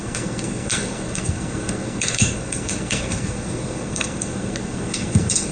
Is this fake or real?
fake